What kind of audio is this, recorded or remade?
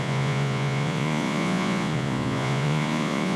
remade